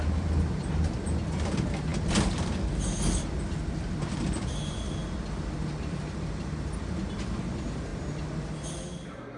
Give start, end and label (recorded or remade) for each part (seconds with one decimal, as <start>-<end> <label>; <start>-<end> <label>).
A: 0.0-5.0 remade; 5.0-5.9 recorded; 5.9-7.9 remade; 7.9-8.9 recorded; 8.9-9.4 remade